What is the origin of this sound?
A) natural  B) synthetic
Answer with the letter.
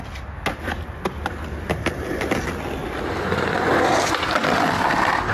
A